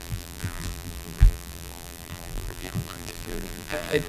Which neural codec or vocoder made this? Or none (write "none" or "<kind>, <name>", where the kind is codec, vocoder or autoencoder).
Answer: vocoder, BigVGAN v2